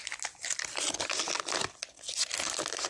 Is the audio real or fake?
real